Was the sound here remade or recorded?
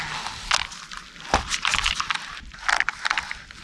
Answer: recorded